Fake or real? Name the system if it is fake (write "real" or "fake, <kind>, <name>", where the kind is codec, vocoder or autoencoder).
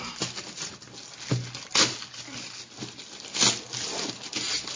real